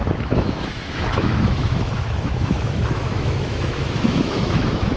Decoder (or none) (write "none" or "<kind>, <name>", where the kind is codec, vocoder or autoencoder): autoencoder, DAC-VAE